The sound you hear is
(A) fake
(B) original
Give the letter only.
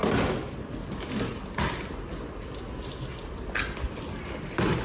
B